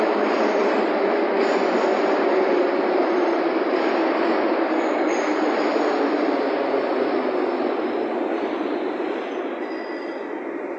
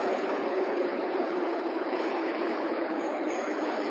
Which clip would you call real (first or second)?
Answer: first